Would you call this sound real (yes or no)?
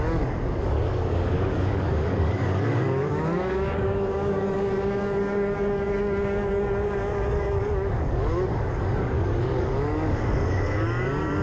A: no